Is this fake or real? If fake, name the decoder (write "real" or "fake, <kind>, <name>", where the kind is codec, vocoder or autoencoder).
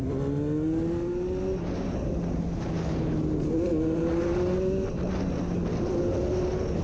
real